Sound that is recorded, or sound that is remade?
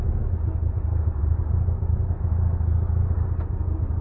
recorded